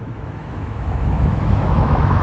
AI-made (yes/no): yes